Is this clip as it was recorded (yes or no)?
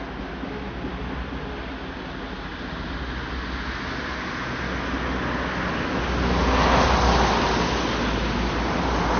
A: yes